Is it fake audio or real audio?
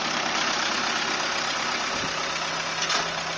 real